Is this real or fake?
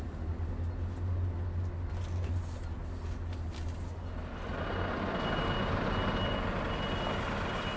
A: real